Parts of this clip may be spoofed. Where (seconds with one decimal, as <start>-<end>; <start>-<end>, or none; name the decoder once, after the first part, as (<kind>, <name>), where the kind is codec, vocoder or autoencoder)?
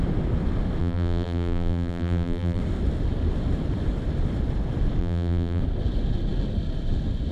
0.8-2.6 (vocoder, BigVGAN v2); 5.0-5.6